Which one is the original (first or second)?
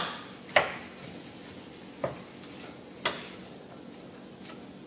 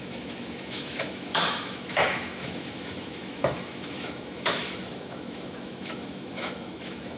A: first